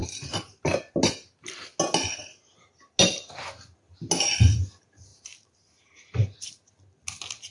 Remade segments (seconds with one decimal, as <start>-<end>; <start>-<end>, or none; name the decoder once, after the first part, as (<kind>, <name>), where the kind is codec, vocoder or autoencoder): 0.0-0.9 (vocoder, BigVGAN v2); 5.1-6.7

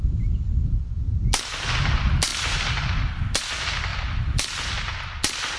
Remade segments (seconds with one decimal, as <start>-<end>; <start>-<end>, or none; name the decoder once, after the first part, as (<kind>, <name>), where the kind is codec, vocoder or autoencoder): 3.9-4.7 (vocoder, BigVGAN v2)

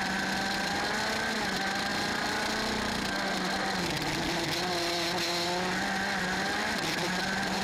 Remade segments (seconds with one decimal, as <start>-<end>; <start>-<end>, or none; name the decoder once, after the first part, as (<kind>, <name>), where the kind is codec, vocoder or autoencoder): 0.0-1.9 (vocoder, BigVGAN v2); 6.2-7.6

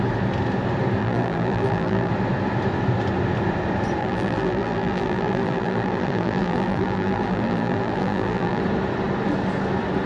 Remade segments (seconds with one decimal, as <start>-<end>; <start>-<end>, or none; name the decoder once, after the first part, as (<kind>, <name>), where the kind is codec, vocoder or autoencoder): 1.0-2.1 (vocoder, BigVGAN v2); 4.0-8.6